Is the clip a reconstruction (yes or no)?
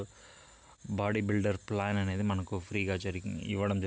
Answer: no